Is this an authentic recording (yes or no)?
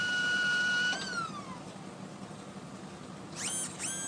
yes